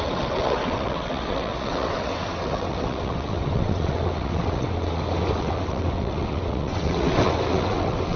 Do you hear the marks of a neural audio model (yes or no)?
yes